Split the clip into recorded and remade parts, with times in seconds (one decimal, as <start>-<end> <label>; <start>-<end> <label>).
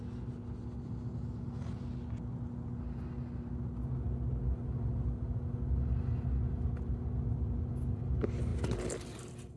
0.0-9.6 recorded